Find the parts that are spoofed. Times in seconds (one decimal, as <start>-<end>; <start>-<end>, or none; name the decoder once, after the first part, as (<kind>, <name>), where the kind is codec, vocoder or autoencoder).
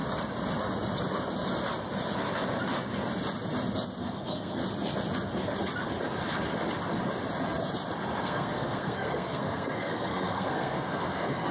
4.0-4.6 (codec, SNAC); 8.2-11.5